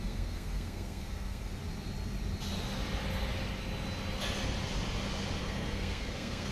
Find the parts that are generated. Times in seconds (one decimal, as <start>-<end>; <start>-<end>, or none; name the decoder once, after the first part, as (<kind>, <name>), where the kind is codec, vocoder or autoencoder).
0.0-1.5 (codec, SNAC); 5.4-6.5